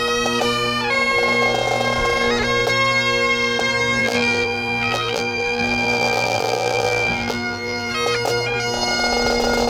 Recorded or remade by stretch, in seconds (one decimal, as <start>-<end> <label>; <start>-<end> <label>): 0.0-4.0 recorded; 4.0-7.9 remade; 7.9-9.7 recorded